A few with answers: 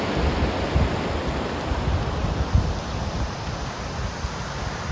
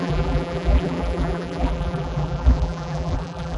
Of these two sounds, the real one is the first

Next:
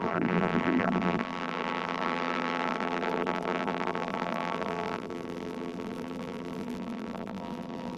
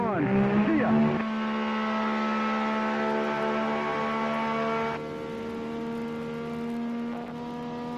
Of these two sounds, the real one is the second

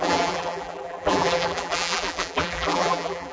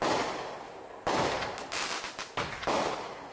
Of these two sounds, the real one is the second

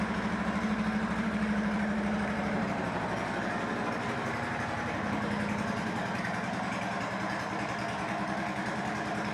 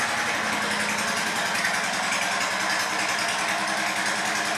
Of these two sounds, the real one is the second